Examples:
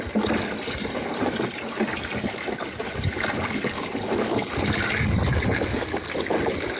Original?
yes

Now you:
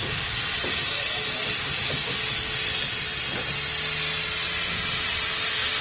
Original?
yes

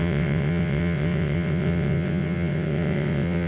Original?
no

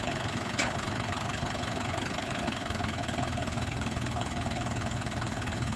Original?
no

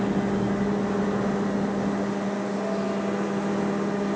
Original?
yes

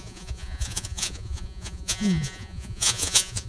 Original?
no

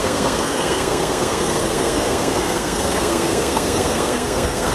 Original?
no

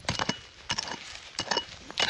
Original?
yes